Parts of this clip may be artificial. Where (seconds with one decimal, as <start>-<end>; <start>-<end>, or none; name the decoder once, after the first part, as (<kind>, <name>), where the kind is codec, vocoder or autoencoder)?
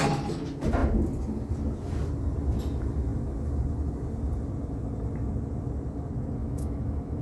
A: 6.4-7.2 (autoencoder, DAC-VAE)